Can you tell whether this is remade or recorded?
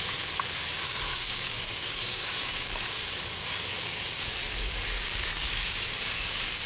remade